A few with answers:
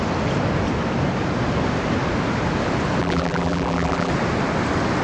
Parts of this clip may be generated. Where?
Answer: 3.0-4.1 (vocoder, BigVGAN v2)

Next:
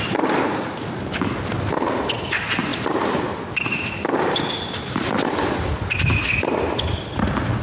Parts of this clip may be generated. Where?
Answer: none

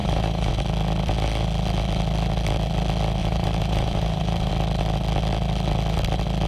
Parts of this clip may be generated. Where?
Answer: 0.0-0.5 (vocoder, BigVGAN v2); 3.2-4.5